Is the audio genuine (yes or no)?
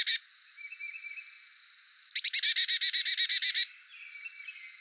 yes